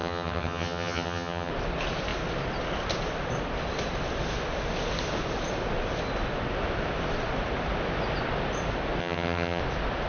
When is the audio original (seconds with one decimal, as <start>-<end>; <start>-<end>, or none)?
1.5-9.0; 9.6-10.1